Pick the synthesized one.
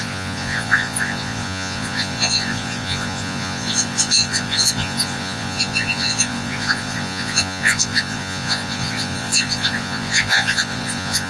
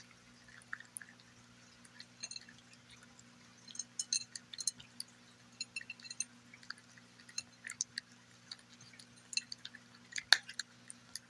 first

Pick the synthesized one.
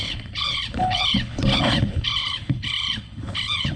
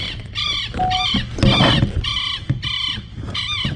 first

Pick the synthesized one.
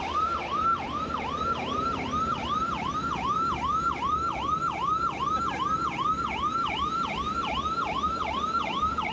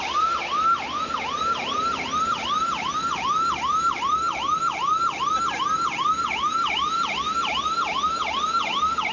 first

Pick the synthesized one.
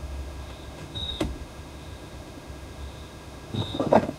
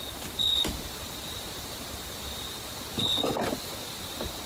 first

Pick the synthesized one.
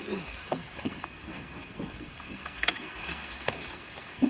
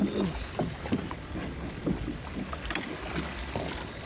first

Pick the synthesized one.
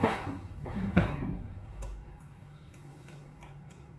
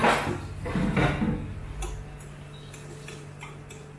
first